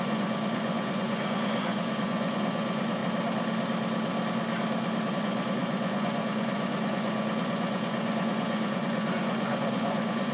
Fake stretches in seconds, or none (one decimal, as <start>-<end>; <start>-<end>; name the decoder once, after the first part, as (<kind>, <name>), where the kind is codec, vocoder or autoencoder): 0.0-3.0 (vocoder, Vocos); 5.1-10.3